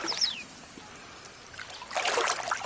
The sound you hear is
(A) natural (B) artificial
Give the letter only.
A